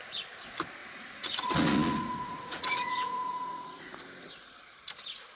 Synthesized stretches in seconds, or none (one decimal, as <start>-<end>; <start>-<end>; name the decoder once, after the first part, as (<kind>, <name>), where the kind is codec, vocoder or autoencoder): 0.8-4.0 (vocoder, Vocos)